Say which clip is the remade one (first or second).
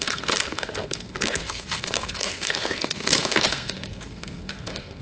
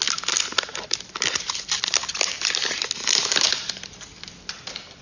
first